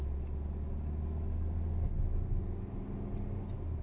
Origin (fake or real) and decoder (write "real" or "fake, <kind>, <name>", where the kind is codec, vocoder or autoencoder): real